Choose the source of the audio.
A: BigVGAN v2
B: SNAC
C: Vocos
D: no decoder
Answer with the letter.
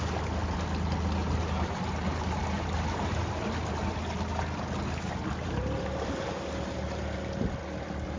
D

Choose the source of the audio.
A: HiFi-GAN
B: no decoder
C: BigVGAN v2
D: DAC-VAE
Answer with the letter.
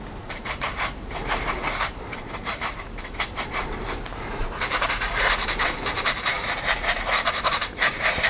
C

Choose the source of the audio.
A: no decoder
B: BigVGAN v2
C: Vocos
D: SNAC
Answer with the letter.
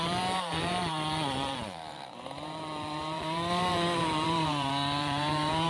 B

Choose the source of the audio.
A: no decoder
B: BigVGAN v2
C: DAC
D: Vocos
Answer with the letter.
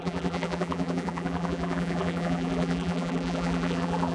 B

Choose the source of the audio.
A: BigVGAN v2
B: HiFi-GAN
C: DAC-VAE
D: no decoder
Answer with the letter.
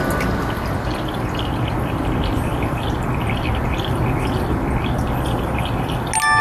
D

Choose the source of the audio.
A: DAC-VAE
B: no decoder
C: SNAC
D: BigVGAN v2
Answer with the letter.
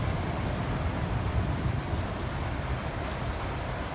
D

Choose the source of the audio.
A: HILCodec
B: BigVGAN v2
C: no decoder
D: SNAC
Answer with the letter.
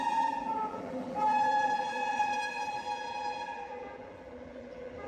B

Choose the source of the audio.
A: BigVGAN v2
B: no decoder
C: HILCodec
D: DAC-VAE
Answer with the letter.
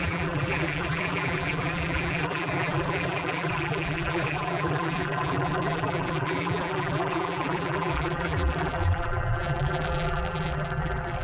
A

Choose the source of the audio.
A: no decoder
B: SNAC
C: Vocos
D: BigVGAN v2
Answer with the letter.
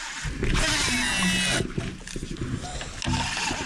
A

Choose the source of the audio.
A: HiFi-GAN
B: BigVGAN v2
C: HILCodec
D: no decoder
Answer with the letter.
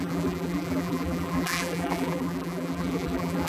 B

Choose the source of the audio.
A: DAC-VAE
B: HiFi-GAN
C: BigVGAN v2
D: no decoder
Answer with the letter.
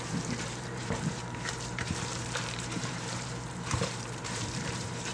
C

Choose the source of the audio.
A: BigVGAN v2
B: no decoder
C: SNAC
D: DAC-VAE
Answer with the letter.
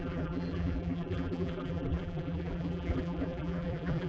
A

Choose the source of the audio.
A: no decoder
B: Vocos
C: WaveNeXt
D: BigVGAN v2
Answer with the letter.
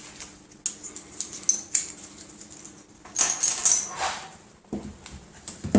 A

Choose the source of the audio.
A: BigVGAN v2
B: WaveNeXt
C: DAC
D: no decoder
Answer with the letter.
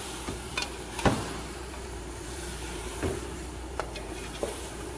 A